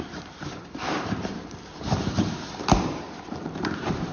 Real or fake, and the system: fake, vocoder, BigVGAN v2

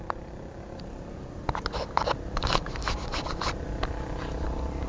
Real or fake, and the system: real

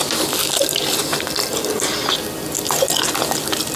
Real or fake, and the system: real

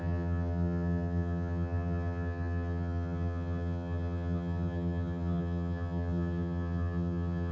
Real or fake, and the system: fake, vocoder, HiFi-GAN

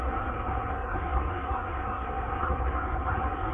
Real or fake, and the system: fake, codec, SNAC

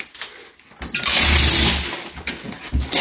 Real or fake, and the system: real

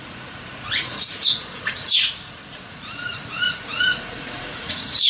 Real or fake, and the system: fake, vocoder, Vocos